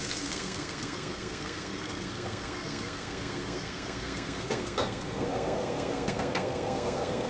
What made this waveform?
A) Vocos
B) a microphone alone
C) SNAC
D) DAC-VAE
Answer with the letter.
C